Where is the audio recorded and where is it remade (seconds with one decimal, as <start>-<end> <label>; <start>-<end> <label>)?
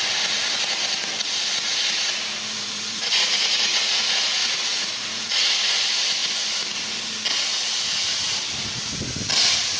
0.0-2.6 recorded; 2.6-5.7 remade; 5.7-9.8 recorded